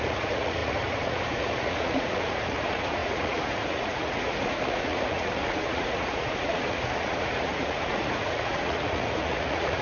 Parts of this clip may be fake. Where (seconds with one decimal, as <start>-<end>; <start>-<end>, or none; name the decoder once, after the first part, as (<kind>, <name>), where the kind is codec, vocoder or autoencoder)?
0.0-9.8 (vocoder, Vocos)

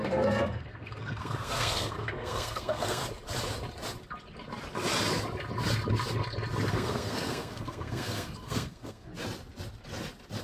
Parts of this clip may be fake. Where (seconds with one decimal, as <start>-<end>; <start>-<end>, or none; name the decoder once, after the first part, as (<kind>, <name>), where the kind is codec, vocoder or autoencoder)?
0.0-3.0 (codec, SNAC); 6.7-9.1

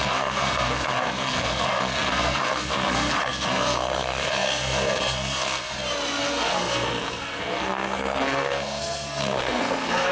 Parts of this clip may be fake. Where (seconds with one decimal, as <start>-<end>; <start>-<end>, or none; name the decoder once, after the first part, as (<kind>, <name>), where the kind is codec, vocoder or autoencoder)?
0.0-5.7 (codec, SNAC); 6.2-10.1

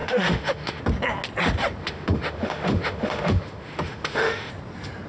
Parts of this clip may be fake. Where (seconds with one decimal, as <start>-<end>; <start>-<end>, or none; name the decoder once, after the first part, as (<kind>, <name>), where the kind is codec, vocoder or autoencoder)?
0.0-0.8 (autoencoder, DAC-VAE); 1.8-4.5

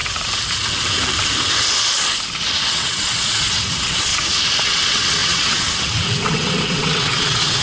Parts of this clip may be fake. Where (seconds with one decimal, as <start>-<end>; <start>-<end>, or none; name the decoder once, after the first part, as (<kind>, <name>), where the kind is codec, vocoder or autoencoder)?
2.7-4.1 (vocoder, WaveNeXt); 4.6-7.6

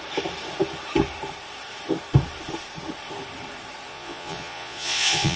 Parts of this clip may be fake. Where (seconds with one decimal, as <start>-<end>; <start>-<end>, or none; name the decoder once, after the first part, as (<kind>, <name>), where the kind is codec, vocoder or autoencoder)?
3.9-5.4 (vocoder, Vocos)